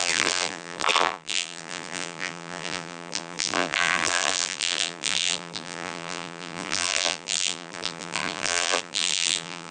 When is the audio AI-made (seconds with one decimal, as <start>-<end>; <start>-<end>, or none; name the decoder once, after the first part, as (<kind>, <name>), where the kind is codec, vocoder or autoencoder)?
0.0-9.7 (vocoder, BigVGAN v2)

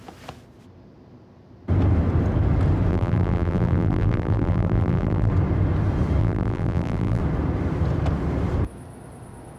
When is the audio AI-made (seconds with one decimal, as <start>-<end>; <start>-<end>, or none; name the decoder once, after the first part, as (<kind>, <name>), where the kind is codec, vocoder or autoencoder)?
2.9-5.3 (vocoder, BigVGAN v2); 6.2-7.2

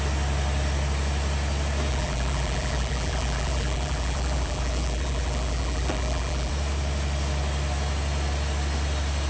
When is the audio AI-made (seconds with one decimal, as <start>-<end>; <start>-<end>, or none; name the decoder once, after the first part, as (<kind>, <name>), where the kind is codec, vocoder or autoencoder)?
1.9-6.5 (vocoder, BigVGAN v2)

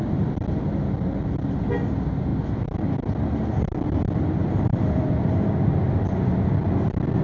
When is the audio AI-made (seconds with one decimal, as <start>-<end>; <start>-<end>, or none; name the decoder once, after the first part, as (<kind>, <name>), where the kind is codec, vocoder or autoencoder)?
4.4-5.2 (vocoder, BigVGAN v2)

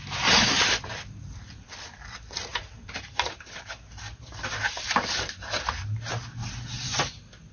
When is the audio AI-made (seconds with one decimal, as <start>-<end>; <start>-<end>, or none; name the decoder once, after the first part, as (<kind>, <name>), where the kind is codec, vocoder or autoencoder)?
2.5-6.0 (vocoder, BigVGAN v2); 6.4-7.0

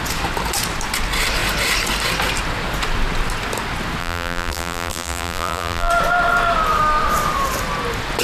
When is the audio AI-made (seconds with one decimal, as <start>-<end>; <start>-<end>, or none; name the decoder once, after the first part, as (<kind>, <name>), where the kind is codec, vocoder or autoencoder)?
4.0-5.9 (vocoder, BigVGAN v2)

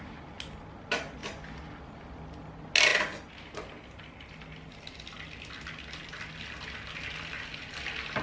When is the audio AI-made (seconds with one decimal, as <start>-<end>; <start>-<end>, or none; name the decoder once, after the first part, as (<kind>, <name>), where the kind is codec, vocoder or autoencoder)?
none

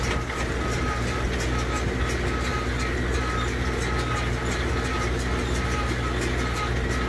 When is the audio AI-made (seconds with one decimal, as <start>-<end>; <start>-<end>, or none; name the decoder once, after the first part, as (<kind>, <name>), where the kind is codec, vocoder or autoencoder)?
none